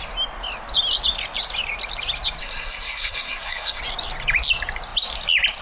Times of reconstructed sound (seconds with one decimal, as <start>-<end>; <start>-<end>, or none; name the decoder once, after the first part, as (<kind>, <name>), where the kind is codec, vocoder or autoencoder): 2.4-3.8 (codec, SNAC)